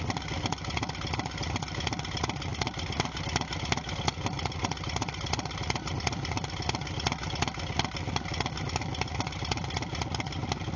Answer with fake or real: real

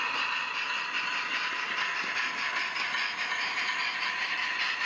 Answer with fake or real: real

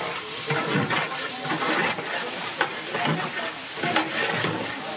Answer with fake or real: real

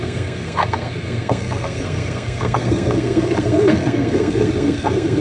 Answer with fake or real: fake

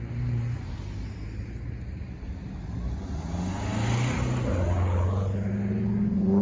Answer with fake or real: real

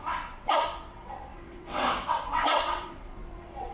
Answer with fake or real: fake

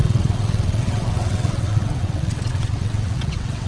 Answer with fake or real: fake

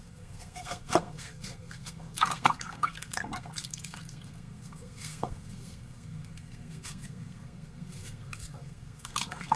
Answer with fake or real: fake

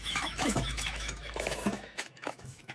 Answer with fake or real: fake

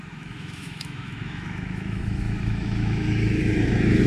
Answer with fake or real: fake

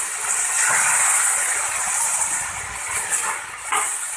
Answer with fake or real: real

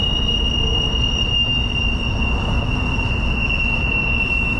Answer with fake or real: fake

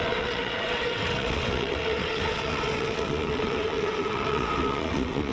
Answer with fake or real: fake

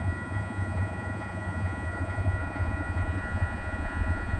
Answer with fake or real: fake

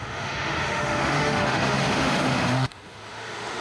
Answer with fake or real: fake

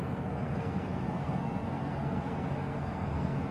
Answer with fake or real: fake